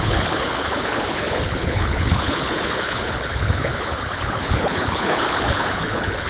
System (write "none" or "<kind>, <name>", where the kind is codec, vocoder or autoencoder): codec, HILCodec